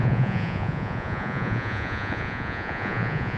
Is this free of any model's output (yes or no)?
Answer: no